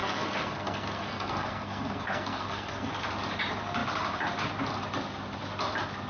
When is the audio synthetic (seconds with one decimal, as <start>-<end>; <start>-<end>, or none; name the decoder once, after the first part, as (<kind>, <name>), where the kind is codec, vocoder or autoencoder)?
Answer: 0.0-2.9 (codec, SNAC)